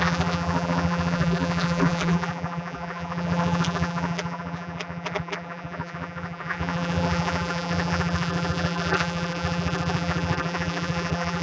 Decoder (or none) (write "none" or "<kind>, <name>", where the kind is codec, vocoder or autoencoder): vocoder, BigVGAN v2